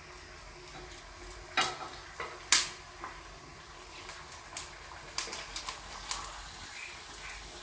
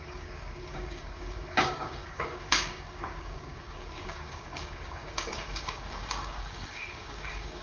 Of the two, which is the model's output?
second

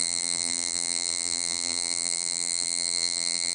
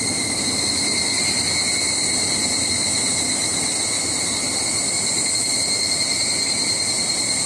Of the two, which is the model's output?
first